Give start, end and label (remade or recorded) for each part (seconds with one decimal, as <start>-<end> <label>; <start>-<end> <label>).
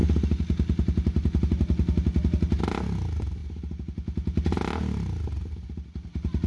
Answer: 0.0-6.5 recorded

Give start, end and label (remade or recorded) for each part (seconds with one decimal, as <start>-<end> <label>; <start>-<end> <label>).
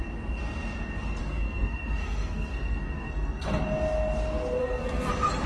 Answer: 0.0-1.2 recorded; 1.2-3.6 remade; 3.6-4.6 recorded; 4.6-5.1 remade; 5.1-5.5 recorded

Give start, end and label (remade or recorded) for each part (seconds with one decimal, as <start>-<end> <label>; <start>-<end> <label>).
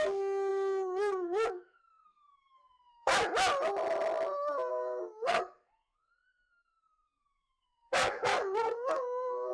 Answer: 0.0-3.1 remade; 3.1-4.7 recorded; 4.7-9.5 remade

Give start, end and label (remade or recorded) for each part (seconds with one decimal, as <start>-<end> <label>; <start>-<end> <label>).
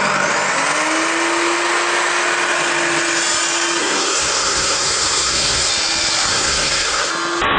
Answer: 0.0-3.8 recorded; 3.8-5.7 remade; 5.7-6.3 recorded; 6.3-7.1 remade; 7.1-7.6 recorded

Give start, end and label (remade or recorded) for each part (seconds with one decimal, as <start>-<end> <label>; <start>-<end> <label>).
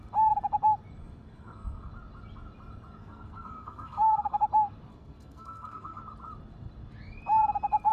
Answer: 0.0-1.0 recorded; 1.0-1.9 remade; 1.9-3.0 recorded; 3.0-4.4 remade; 4.4-4.9 recorded; 4.9-6.0 remade; 6.0-7.9 recorded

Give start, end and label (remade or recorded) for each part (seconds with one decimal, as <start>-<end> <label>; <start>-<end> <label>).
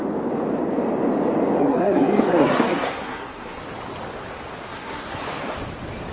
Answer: 0.0-1.6 recorded; 1.6-3.6 remade; 3.6-4.7 recorded; 4.7-5.2 remade; 5.2-6.1 recorded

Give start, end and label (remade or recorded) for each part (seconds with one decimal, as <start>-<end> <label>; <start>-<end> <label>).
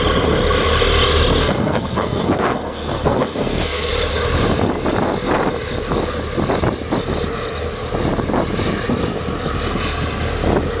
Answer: 0.0-1.4 recorded; 1.4-3.9 remade; 3.9-10.8 recorded